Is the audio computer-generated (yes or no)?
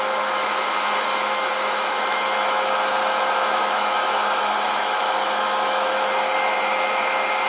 yes